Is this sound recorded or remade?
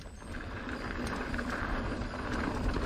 recorded